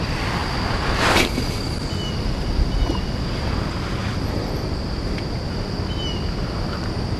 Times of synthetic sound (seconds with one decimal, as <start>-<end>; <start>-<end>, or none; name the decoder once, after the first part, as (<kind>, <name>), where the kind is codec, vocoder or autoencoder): 4.0-4.7 (vocoder, BigVGAN v2)